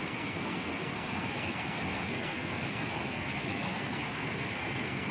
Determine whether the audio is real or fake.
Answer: fake